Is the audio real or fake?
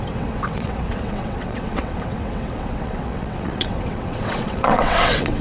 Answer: fake